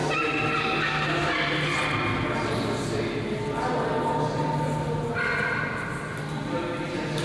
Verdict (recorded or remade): recorded